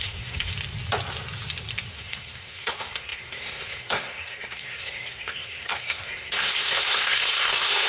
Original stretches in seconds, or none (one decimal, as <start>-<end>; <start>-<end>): 0.5-1.9